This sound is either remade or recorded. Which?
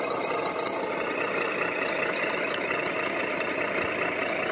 recorded